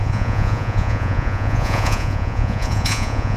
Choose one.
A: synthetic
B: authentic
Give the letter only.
A